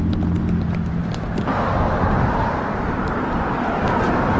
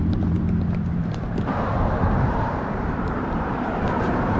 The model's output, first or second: second